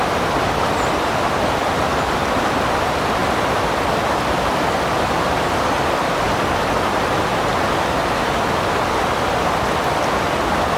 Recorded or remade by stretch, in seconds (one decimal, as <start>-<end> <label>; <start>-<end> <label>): 0.0-10.8 recorded